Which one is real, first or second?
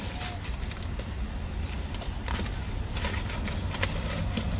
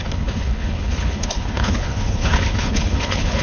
first